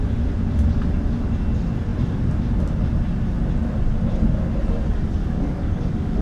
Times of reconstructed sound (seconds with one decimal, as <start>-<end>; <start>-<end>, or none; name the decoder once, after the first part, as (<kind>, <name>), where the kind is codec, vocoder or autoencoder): 5.2-6.2 (codec, DAC)